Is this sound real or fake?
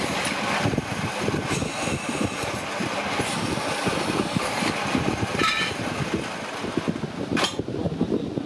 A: real